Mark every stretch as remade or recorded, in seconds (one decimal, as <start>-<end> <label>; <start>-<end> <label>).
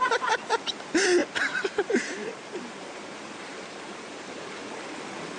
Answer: 0.0-1.2 recorded; 1.2-4.4 remade; 4.4-5.4 recorded